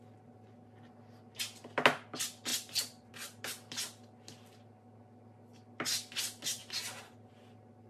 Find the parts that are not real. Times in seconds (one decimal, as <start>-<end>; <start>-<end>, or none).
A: none